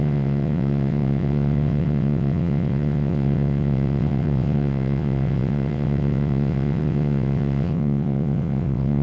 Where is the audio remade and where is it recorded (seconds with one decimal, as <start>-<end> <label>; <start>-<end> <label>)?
0.0-9.0 remade